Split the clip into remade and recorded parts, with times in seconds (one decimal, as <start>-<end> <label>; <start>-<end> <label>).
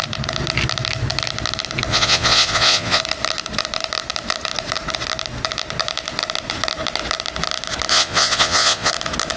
0.0-1.9 recorded; 1.9-3.0 remade; 3.0-7.9 recorded; 7.9-8.9 remade; 8.9-9.4 recorded